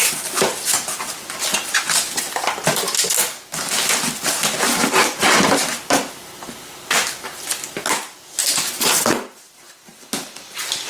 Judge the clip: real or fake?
real